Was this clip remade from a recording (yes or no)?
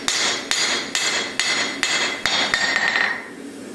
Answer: no